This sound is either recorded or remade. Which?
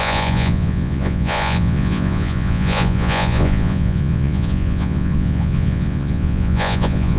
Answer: remade